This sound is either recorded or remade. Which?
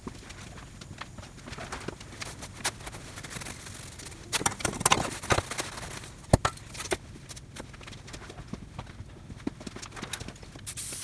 recorded